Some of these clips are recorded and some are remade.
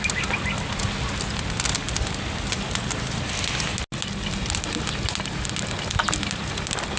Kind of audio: recorded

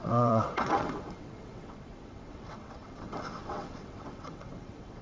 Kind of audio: remade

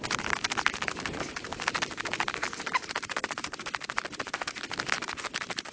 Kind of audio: recorded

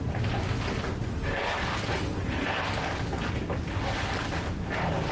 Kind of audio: recorded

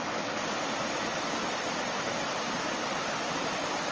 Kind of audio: recorded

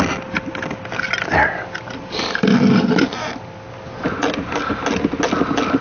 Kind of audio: recorded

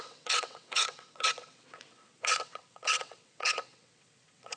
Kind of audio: remade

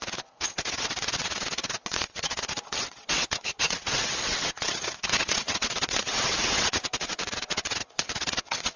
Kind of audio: remade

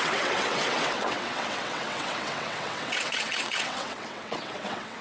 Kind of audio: remade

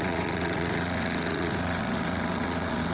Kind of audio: remade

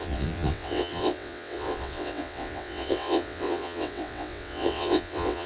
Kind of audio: remade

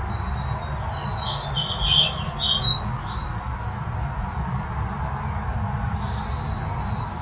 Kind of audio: recorded